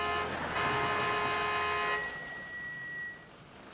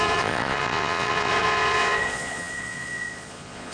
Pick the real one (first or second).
first